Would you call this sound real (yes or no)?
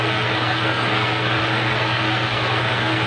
no